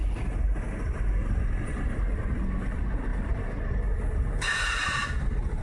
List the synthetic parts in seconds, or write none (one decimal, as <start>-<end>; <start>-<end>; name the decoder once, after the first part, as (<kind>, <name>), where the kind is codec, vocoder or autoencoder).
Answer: 1.2-2.0 (vocoder, BigVGAN v2); 3.1-3.6